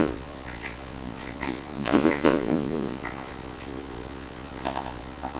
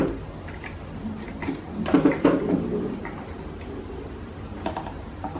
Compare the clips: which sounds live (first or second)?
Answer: second